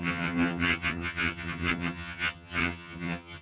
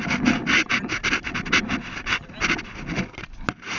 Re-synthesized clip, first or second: first